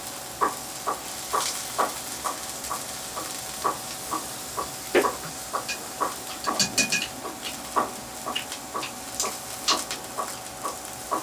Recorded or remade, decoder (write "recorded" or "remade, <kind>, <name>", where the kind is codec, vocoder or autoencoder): recorded